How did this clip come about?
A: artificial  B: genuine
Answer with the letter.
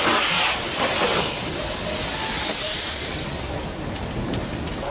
B